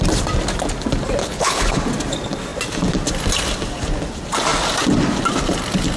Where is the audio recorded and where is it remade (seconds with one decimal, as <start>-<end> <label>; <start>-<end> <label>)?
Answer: 0.0-1.2 recorded; 1.2-1.8 remade; 1.8-6.0 recorded